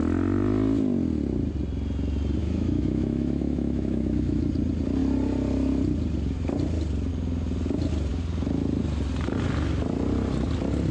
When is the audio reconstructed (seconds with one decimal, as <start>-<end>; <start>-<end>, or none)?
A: 2.4-4.5